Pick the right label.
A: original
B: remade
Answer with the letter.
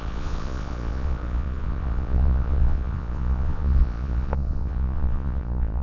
B